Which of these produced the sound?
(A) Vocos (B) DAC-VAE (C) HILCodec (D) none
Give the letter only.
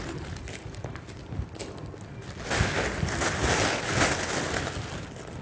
D